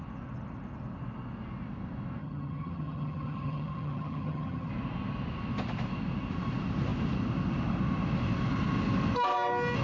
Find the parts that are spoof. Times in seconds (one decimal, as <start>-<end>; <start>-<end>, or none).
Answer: 2.2-4.7